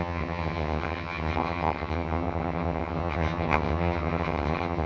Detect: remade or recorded remade